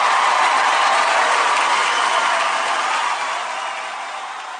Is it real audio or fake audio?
real